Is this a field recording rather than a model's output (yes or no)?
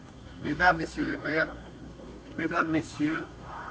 no